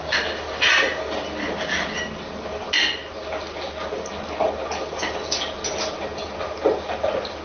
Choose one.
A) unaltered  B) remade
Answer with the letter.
A